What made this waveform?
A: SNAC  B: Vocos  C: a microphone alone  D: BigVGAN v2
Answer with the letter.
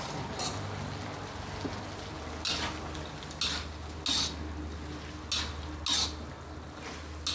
C